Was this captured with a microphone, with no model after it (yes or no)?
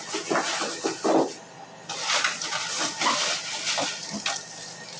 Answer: yes